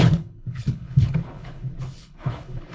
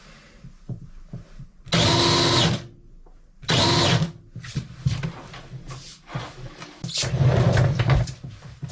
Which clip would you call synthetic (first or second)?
first